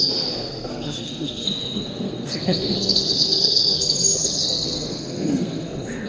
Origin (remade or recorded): remade